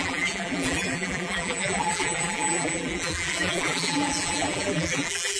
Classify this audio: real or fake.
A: fake